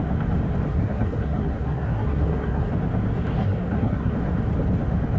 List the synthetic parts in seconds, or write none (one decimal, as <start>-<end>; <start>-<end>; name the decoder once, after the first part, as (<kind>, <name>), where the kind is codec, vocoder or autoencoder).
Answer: 0.7-2.7 (codec, SNAC); 3.4-4.1